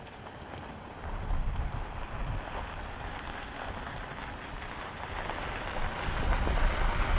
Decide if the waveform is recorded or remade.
recorded